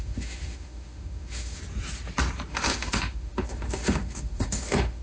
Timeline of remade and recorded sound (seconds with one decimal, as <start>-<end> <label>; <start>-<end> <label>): 0.0-1.6 remade; 1.6-2.5 recorded; 2.5-5.0 remade